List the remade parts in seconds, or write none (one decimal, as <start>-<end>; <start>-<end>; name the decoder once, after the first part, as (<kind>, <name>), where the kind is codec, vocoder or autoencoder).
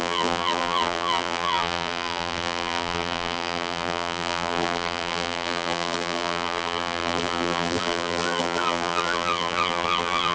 0.0-10.3 (vocoder, BigVGAN v2)